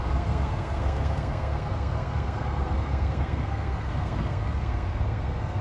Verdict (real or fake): fake